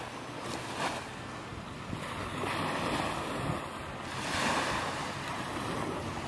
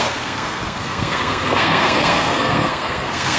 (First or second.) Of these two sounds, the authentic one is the first